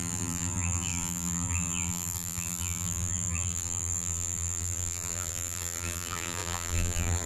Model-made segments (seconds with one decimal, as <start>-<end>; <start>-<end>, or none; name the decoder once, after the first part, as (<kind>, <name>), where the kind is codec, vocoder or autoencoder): 0.0-7.3 (vocoder, BigVGAN v2)